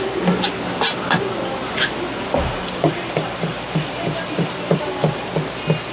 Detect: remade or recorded recorded